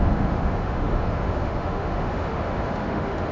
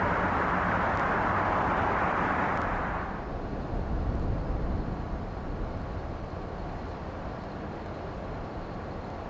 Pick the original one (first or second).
second